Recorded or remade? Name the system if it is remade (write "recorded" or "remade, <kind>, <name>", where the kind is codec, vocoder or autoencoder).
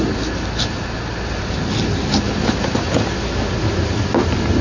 recorded